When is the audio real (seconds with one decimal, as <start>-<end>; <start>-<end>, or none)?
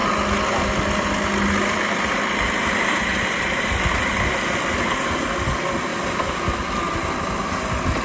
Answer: 0.0-8.0